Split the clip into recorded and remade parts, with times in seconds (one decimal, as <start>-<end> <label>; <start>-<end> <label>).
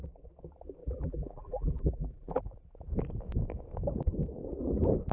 0.0-0.8 recorded; 0.8-2.4 remade; 2.4-5.1 recorded